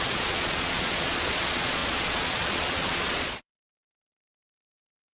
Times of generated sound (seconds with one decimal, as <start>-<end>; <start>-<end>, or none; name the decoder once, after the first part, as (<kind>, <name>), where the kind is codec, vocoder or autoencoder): 0.0-5.1 (vocoder, Vocos)